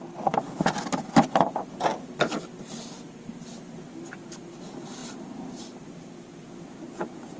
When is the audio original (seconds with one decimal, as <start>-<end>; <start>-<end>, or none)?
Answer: 0.0-7.4